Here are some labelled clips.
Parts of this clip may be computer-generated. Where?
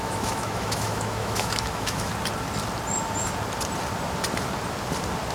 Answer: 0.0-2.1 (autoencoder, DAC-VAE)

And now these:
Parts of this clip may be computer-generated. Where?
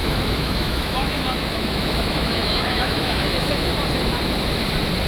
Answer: 0.0-3.7 (autoencoder, DAC-VAE)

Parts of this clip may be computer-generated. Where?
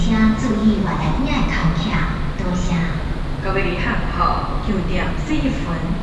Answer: 0.6-1.2 (autoencoder, DAC-VAE)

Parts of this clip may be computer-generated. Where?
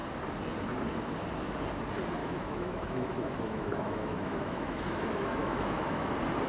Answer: 2.2-6.1 (autoencoder, DAC-VAE)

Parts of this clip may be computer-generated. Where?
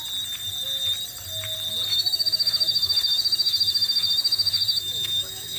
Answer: 1.9-5.6 (autoencoder, DAC-VAE)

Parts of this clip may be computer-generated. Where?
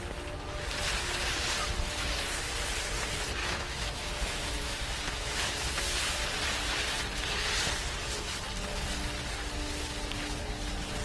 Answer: 3.4-5.7 (autoencoder, DAC-VAE)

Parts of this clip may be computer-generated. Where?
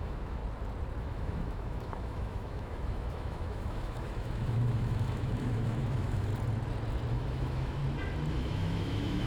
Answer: 0.0-0.4 (autoencoder, DAC-VAE); 1.0-6.3; 7.1-7.8; 8.3-9.3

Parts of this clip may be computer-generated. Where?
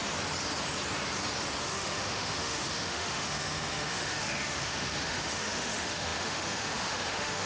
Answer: 1.6-7.5 (autoencoder, DAC-VAE)